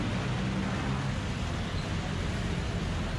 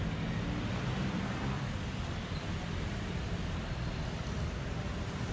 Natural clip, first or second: first